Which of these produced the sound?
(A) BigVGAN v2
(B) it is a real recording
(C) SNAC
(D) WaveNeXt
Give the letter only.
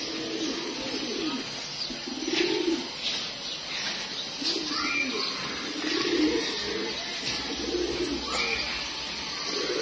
B